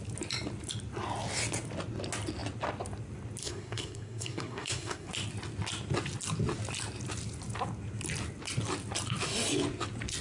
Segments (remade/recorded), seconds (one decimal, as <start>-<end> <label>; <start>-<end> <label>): 0.0-3.4 recorded; 3.4-5.1 remade; 5.1-10.2 recorded